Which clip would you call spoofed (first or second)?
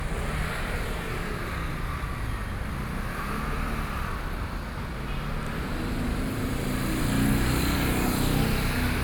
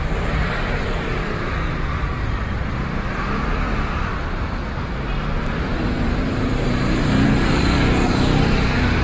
second